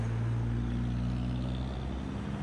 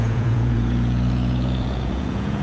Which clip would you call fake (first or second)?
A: second